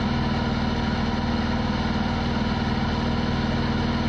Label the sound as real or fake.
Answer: real